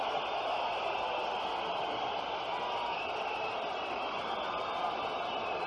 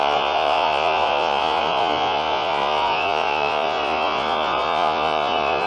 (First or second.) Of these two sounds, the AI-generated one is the second